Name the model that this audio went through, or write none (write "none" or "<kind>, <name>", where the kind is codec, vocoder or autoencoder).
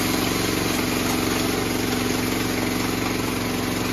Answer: none